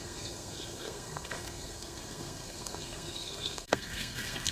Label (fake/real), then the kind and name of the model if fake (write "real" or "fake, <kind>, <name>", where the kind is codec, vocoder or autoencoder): fake, codec, SNAC